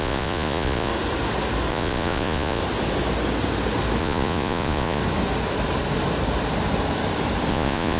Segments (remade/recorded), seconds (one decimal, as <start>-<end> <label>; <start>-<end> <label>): 0.0-0.9 remade; 0.9-1.7 recorded; 1.7-2.6 remade; 2.6-4.0 recorded; 4.0-5.0 remade; 5.0-7.5 recorded; 7.5-8.0 remade